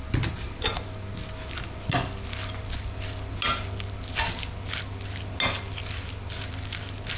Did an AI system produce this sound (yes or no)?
no